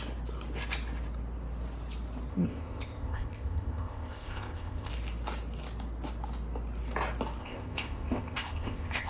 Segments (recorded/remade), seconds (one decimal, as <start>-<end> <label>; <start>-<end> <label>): 0.0-2.3 recorded; 2.3-4.9 remade; 4.9-7.4 recorded; 7.4-9.1 remade

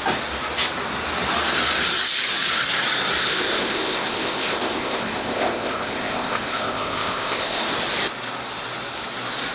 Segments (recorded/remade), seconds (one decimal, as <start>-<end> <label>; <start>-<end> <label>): 0.0-3.2 recorded; 3.2-7.6 remade; 7.6-9.5 recorded

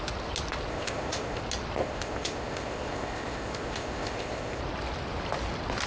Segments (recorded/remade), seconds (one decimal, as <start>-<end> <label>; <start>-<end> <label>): 0.0-0.7 recorded; 0.7-1.4 remade; 1.4-1.8 recorded; 1.8-4.6 remade; 4.6-5.9 recorded

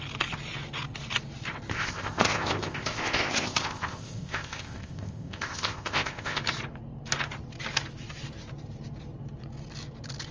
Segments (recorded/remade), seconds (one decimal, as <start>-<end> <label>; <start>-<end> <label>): 0.0-1.7 recorded; 1.7-6.4 remade; 6.4-10.3 recorded

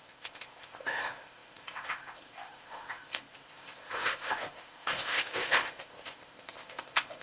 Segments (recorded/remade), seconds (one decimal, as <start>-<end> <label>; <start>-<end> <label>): 0.0-7.2 remade

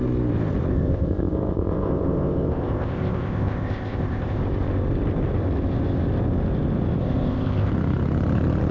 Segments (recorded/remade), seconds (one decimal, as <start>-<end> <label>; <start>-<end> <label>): 0.0-0.7 recorded; 0.7-4.4 remade; 4.4-7.0 recorded; 7.0-7.7 remade; 7.7-8.7 recorded

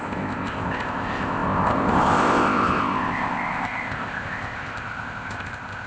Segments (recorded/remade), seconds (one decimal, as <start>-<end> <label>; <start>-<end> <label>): 0.0-5.9 remade